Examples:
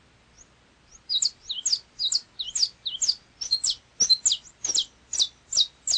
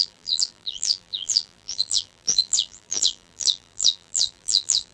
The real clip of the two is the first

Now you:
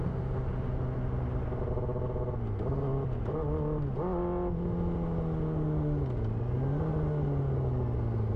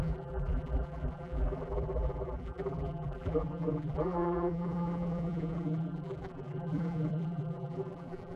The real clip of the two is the first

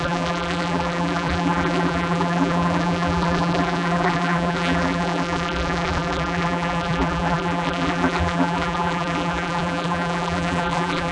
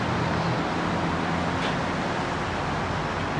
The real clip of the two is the second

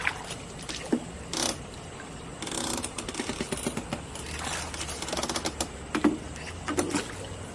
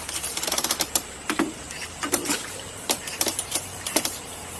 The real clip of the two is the first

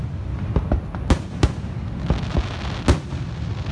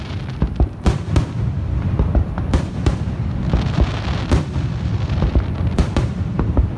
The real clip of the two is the first